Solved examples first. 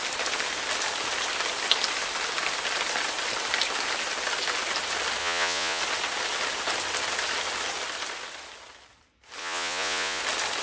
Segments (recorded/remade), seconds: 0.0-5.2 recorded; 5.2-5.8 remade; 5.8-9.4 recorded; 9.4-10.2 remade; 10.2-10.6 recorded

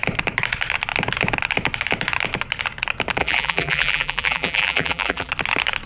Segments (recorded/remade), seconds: 0.0-3.2 recorded; 3.2-5.3 remade; 5.3-5.9 recorded

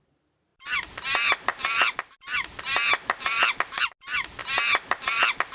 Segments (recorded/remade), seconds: 0.0-5.5 recorded